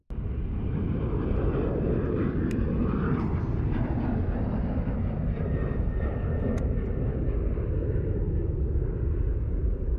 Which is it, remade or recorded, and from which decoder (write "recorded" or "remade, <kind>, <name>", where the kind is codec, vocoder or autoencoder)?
recorded